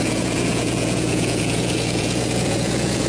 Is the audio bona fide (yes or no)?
no